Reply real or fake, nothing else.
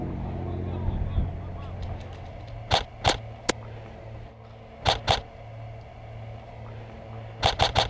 real